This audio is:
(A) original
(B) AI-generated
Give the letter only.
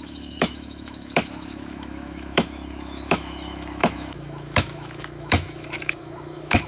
B